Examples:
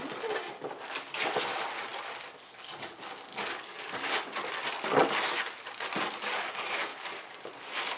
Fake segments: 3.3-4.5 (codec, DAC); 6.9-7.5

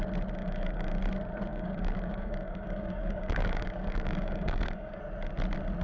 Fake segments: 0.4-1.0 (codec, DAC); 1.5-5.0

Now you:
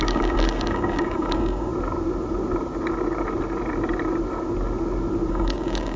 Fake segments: 0.0-1.7 (codec, DAC); 5.3-6.0

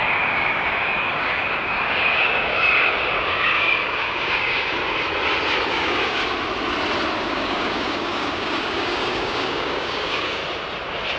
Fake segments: 0.0-4.8 (codec, DAC); 5.7-6.2; 7.3-10.4

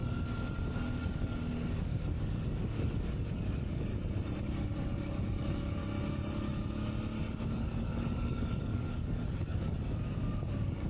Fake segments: 1.0-3.9 (codec, DAC); 4.4-5.8; 7.4-10.9